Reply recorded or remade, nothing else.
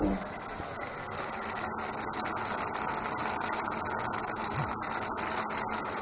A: recorded